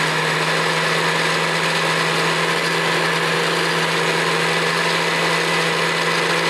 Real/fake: real